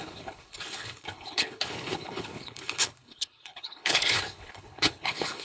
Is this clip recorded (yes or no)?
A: no